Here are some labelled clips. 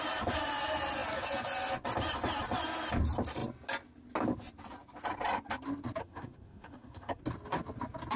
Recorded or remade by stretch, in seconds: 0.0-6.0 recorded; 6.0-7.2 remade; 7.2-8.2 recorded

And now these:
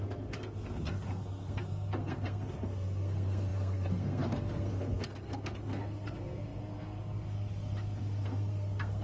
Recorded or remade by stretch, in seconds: 0.0-9.0 remade